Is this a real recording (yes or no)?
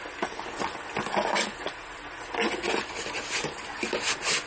yes